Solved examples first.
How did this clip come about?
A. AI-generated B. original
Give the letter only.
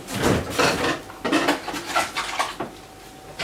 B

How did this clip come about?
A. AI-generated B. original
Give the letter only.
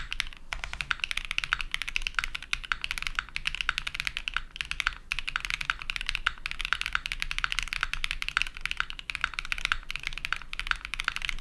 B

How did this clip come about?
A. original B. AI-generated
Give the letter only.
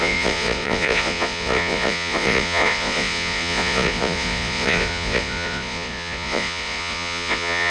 B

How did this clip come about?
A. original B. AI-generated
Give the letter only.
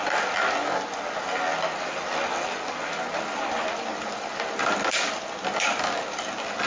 A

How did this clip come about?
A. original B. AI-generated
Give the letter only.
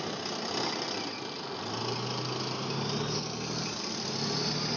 A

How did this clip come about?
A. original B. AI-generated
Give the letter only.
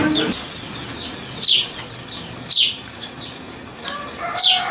A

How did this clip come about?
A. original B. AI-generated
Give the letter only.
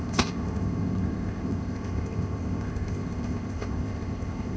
B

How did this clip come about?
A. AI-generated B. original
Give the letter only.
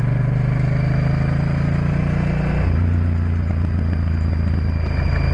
B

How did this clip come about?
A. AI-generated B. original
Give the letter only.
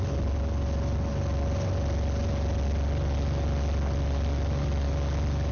B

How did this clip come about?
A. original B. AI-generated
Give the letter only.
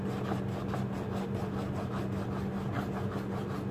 A